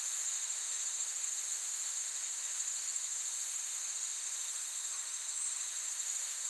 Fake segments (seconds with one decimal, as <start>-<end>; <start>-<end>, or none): 0.0-6.5